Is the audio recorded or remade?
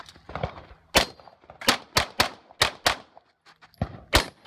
recorded